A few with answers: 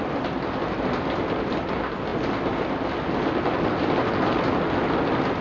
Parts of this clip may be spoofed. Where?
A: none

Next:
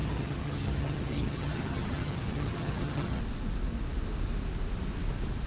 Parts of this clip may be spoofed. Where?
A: 0.0-3.2 (vocoder, HiFi-GAN)

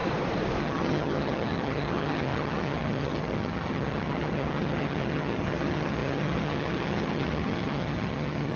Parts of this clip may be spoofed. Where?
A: 0.6-8.6 (vocoder, HiFi-GAN)

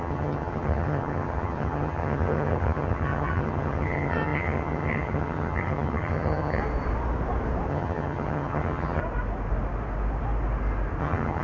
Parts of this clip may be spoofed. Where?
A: 0.0-6.6 (vocoder, HiFi-GAN); 7.7-9.0; 11.0-11.4

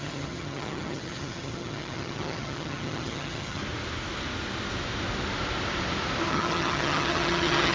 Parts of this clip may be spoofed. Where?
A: 0.0-3.6 (vocoder, HiFi-GAN); 6.3-7.7